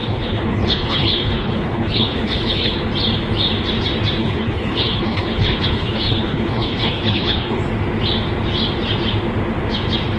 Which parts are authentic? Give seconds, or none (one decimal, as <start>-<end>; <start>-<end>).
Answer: 2.8-4.2; 7.6-10.2